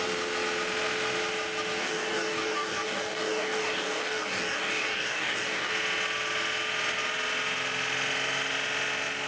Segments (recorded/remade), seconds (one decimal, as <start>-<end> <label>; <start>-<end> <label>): 0.0-1.8 recorded; 1.8-5.7 remade; 5.7-9.3 recorded